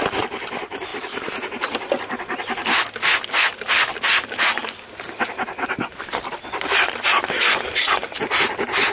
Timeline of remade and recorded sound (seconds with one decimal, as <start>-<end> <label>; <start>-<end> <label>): 0.0-8.9 recorded